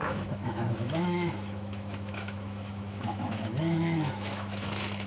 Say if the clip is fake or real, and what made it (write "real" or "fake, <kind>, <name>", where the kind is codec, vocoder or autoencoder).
fake, autoencoder, DAC-VAE